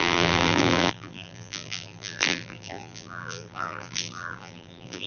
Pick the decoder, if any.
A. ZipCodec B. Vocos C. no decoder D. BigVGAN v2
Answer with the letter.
D